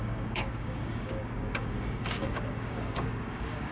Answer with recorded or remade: remade